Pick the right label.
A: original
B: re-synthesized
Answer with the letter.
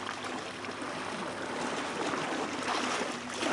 A